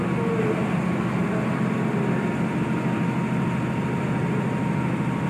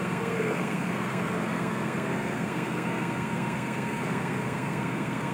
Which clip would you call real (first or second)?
first